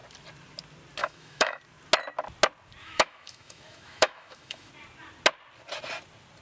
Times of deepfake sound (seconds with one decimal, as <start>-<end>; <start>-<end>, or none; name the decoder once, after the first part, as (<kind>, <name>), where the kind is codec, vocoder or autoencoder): 1.0-1.6 (autoencoder, DAC-VAE); 2.8-4.7